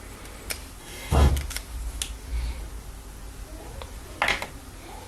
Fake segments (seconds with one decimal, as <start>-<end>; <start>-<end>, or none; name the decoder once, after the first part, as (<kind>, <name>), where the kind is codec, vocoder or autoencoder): 0.8-1.3 (codec, DAC)